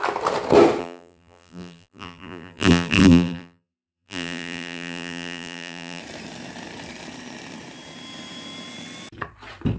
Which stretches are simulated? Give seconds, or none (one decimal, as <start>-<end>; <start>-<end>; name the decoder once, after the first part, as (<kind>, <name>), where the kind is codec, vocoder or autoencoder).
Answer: 0.8-6.0 (vocoder, BigVGAN v2)